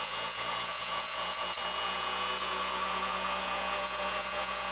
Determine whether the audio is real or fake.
fake